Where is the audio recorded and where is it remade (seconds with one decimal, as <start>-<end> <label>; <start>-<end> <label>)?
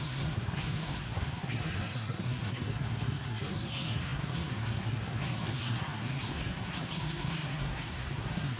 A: 0.0-8.6 remade